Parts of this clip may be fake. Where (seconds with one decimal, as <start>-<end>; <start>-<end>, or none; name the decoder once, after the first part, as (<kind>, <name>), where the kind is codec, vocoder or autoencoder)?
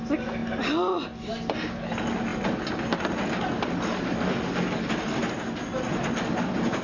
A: none